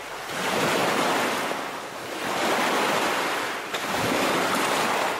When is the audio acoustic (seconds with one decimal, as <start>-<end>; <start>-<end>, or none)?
0.0-5.2